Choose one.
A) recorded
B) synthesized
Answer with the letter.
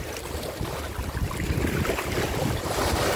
A